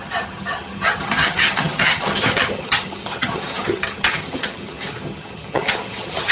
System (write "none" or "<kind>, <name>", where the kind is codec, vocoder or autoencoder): vocoder, HiFi-GAN